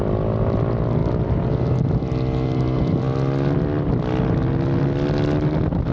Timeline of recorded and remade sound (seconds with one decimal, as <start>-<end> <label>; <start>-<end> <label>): 0.0-5.9 recorded